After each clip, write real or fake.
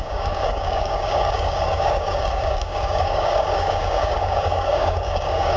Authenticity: fake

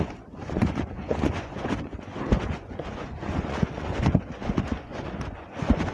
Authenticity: fake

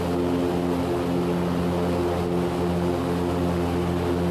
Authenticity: real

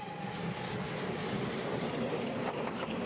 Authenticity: real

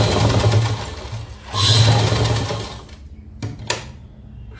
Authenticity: real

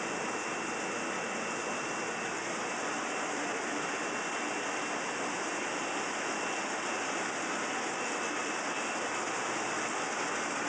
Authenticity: real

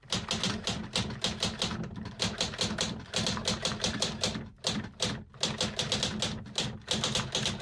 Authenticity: real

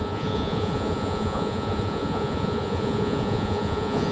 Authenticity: fake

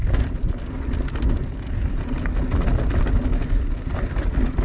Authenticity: real